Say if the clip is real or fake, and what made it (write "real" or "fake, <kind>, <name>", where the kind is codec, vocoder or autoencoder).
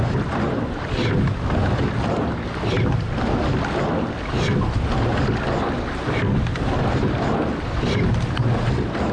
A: real